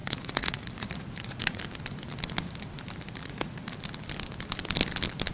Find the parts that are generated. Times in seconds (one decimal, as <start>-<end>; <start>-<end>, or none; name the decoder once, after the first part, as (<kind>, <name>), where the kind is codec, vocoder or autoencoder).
0.0-1.6 (vocoder, Vocos); 3.2-3.7